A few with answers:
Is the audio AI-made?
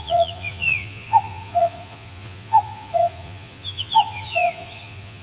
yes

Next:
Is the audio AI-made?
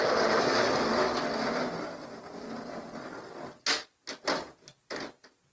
no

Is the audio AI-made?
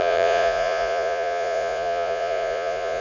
yes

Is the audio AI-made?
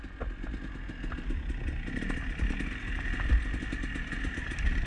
no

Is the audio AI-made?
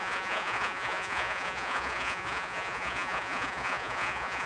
yes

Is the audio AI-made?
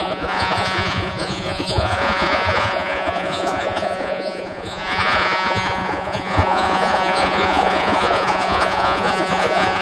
yes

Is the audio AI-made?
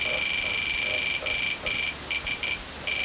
no